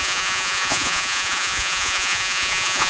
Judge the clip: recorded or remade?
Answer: remade